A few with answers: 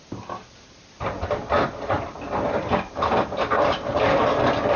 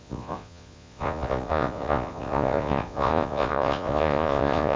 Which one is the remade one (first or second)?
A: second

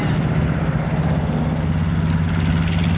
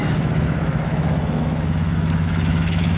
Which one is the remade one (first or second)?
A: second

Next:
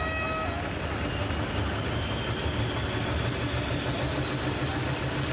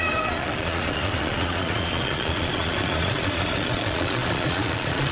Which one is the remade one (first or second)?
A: second